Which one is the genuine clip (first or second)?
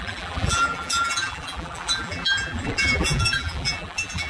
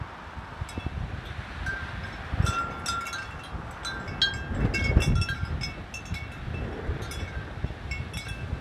second